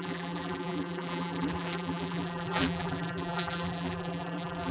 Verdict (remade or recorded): remade